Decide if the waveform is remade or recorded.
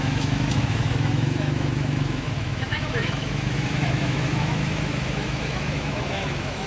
remade